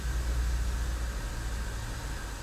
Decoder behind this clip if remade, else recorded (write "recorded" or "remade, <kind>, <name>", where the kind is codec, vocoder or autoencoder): recorded